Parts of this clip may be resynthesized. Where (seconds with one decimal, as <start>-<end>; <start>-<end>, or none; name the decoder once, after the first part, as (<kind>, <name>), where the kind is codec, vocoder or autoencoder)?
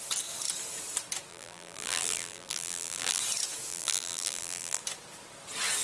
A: 1.3-3.2 (vocoder, BigVGAN v2); 3.7-4.8